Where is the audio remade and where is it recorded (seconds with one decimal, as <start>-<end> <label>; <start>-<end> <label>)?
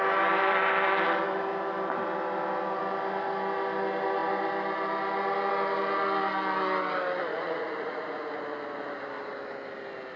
0.0-7.3 recorded; 7.3-8.4 remade; 8.4-10.2 recorded